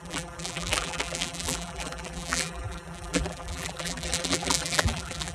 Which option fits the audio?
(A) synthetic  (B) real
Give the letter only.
A